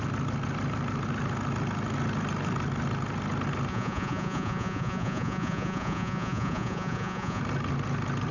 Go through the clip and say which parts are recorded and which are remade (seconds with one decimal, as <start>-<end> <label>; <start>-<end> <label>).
0.0-3.7 recorded; 3.7-7.4 remade; 7.4-8.3 recorded